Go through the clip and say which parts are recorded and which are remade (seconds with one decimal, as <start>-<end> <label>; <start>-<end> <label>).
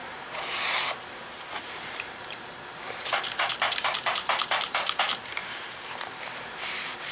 0.0-7.1 remade